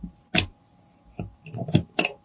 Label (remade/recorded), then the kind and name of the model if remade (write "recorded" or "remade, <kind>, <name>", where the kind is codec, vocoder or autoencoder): recorded